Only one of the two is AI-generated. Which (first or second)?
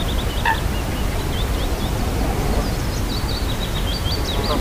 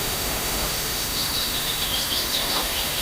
second